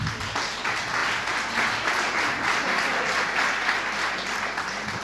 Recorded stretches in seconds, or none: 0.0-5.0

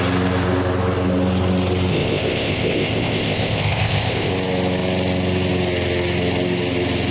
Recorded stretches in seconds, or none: 0.0-1.9; 4.3-7.1

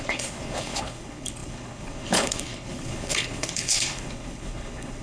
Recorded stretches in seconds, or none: none